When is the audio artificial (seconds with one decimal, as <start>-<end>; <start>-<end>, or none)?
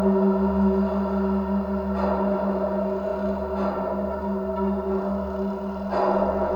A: none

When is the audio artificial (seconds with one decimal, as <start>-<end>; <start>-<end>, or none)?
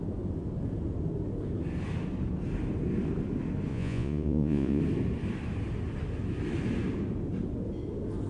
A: 3.7-4.8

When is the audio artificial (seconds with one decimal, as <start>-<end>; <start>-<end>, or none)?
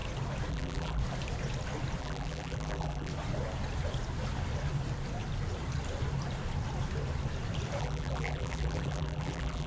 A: 0.5-1.0; 2.0-3.1; 7.8-9.7